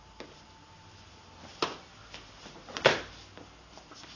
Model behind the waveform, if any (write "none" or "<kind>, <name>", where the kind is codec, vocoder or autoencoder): none